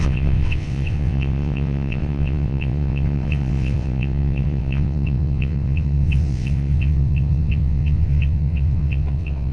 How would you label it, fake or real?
fake